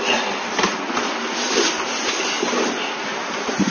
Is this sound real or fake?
real